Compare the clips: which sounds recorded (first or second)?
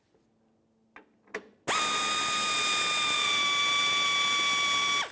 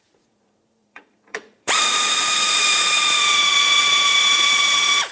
first